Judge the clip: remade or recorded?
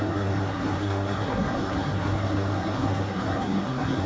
remade